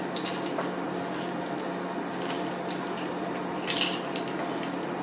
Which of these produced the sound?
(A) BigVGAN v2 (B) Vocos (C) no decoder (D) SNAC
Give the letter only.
C